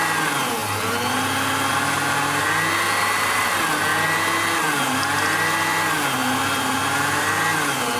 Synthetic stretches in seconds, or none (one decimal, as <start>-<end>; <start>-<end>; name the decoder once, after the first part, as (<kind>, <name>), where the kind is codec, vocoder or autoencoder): none

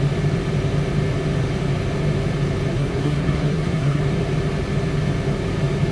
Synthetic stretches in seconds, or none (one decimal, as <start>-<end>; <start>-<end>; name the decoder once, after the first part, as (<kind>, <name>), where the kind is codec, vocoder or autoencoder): 2.7-4.0 (codec, SNAC)

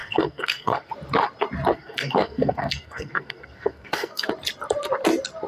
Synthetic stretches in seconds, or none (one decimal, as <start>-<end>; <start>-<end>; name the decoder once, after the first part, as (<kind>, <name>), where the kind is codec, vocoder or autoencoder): 0.0-0.9 (codec, SNAC); 1.7-4.3

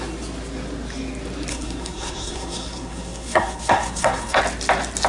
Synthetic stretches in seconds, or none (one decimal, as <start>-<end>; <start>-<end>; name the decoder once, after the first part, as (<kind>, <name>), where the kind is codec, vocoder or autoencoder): 1.5-4.4 (codec, SNAC)

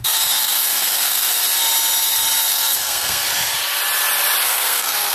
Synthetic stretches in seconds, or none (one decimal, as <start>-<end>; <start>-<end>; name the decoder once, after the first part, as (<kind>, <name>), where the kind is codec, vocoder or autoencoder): 0.0-1.4 (codec, SNAC); 2.5-3.2; 4.4-5.1

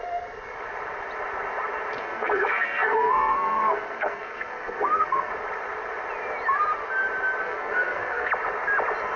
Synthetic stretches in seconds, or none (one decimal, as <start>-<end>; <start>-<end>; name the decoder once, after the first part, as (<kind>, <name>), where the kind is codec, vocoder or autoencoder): 2.0-5.3 (codec, SNAC); 7.4-8.3